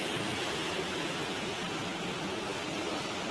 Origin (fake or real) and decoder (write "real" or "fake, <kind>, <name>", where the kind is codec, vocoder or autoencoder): real